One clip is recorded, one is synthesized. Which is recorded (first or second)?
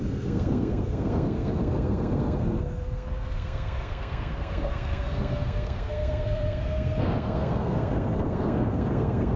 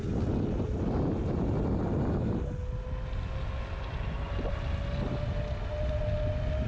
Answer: second